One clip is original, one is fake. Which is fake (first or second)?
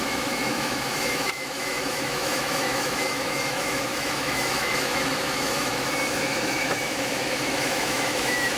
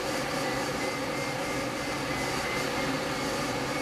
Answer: first